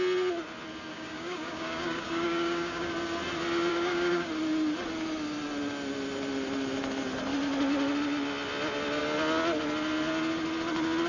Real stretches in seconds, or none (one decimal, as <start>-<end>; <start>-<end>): 0.0-0.9; 2.9-3.7; 4.3-11.1